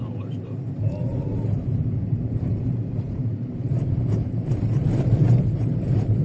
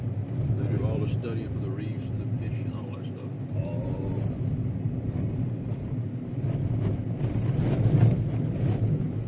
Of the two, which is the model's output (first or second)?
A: first